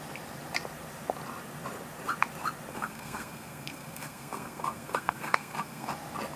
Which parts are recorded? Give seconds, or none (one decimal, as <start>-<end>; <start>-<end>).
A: 0.0-2.7; 5.9-6.4